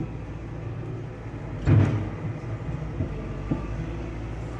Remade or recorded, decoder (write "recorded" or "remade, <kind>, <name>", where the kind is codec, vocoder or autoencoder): recorded